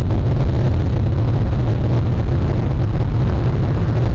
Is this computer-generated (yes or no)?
no